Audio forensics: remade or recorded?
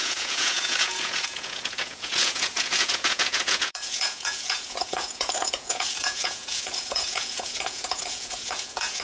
remade